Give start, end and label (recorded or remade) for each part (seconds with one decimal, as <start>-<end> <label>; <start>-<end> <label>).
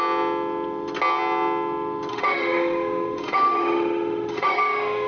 0.0-2.1 recorded; 2.1-5.1 remade